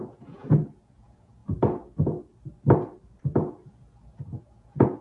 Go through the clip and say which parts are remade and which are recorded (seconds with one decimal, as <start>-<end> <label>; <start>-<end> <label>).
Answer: 0.0-1.4 remade; 1.4-4.4 recorded; 4.4-5.0 remade